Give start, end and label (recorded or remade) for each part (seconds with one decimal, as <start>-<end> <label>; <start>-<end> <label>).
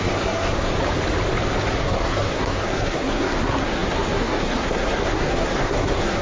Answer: 0.0-0.7 remade; 0.7-1.8 recorded; 1.8-6.2 remade